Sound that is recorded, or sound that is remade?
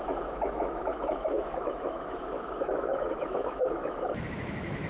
remade